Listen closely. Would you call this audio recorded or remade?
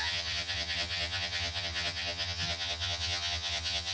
remade